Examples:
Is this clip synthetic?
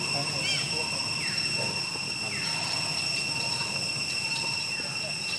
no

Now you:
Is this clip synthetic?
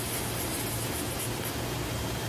no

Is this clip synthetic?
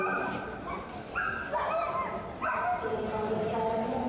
yes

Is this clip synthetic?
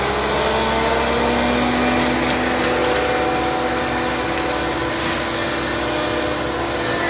no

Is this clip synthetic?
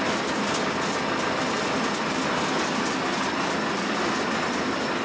no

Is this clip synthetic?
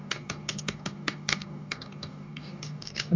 yes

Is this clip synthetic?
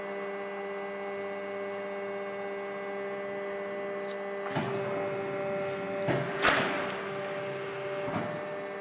no